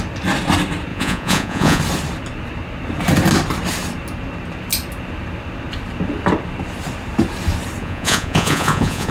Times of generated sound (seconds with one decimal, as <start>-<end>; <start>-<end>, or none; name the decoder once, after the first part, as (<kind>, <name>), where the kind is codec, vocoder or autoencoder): 0.9-1.8 (vocoder, Vocos); 7.8-9.1